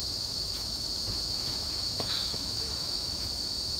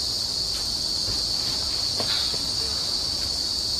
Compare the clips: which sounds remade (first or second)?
first